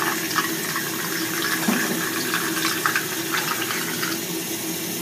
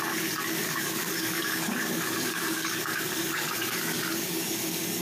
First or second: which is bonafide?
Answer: first